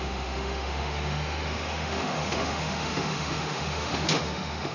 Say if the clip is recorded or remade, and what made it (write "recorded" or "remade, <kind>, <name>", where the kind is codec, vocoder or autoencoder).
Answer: remade, autoencoder, DAC-VAE